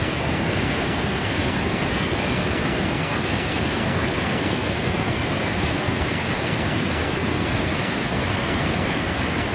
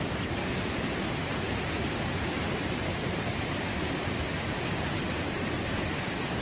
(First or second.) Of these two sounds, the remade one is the first